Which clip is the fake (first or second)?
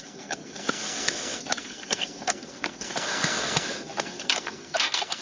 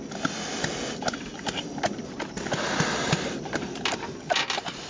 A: first